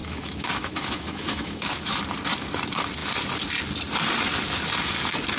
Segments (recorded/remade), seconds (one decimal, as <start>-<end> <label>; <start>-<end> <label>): 0.0-2.0 remade; 2.0-5.4 recorded